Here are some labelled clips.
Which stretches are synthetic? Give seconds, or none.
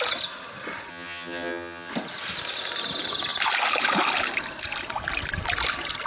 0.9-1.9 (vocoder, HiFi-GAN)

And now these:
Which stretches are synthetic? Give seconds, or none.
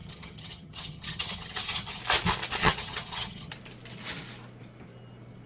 0.0-2.0 (vocoder, HiFi-GAN); 2.6-3.5